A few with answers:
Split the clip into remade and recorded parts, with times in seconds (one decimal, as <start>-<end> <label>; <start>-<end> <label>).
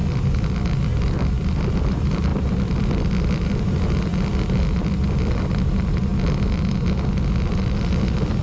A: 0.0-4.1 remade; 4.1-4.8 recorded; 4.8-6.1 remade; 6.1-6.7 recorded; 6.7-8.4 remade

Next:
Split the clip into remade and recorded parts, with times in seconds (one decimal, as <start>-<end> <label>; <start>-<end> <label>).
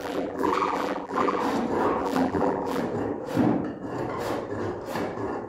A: 0.0-1.4 remade; 1.4-2.0 recorded; 2.0-2.8 remade; 2.8-5.5 recorded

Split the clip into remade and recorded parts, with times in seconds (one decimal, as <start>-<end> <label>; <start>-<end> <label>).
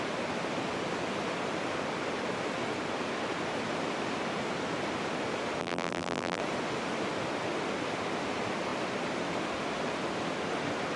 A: 0.0-5.6 recorded; 5.6-6.4 remade; 6.4-11.0 recorded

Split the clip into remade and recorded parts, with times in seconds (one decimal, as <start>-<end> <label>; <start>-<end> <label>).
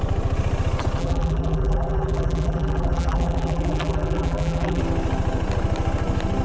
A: 0.0-1.0 recorded; 1.0-4.8 remade; 4.8-6.4 recorded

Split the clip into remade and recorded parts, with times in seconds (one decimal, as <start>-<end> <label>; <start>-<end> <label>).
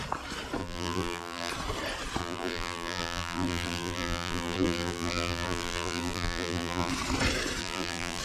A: 0.0-0.6 recorded; 0.6-1.5 remade; 1.5-2.2 recorded; 2.2-6.9 remade; 6.9-7.6 recorded; 7.6-8.2 remade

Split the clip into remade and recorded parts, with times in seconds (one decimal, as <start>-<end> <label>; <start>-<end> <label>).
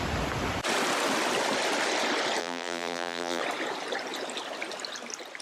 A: 0.0-2.4 recorded; 2.4-3.4 remade; 3.4-5.4 recorded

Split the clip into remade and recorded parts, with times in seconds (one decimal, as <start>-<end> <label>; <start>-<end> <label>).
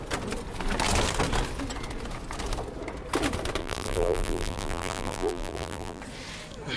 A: 0.0-3.6 recorded; 3.6-6.0 remade; 6.0-6.8 recorded